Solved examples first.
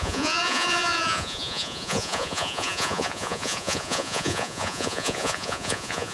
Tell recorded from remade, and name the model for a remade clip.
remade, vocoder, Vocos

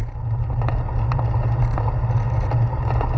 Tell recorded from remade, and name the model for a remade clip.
recorded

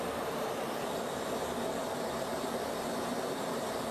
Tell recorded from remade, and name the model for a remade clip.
recorded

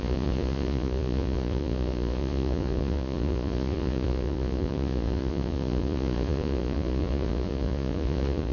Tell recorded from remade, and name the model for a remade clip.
remade, vocoder, Vocos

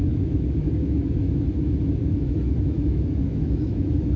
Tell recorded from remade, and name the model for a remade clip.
remade, autoencoder, DAC-VAE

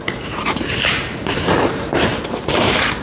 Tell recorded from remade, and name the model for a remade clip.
remade, vocoder, BigVGAN v2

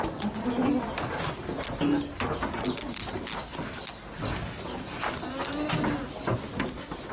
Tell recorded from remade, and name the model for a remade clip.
recorded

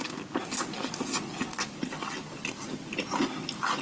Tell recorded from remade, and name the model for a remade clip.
recorded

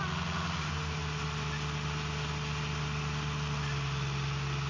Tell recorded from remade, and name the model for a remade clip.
recorded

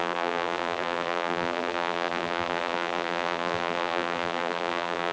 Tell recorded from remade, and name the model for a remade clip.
remade, vocoder, BigVGAN v2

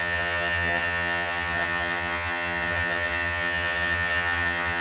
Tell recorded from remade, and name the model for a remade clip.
remade, vocoder, HiFi-GAN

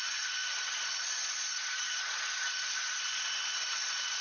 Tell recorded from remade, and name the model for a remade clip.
remade, vocoder, Vocos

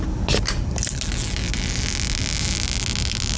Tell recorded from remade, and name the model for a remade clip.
recorded